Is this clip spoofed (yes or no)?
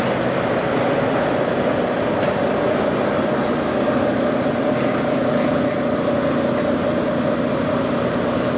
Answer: no